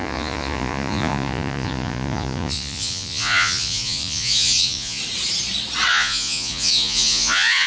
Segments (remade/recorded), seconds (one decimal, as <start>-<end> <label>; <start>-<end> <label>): 0.0-5.0 remade; 5.0-5.9 recorded; 5.9-7.7 remade